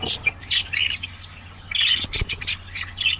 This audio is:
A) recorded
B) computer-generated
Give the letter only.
A